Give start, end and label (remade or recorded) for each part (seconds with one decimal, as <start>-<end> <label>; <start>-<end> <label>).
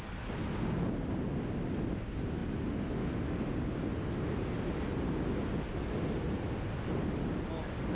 0.0-7.9 recorded